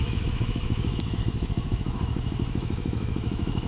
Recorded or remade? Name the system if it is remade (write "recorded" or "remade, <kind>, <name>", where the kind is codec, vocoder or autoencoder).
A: remade, autoencoder, DAC-VAE